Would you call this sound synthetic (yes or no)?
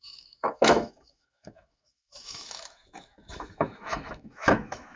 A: yes